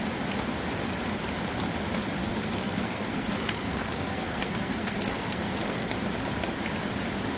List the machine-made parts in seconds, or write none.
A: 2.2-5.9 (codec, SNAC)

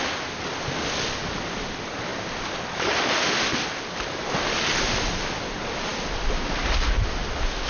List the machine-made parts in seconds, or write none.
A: none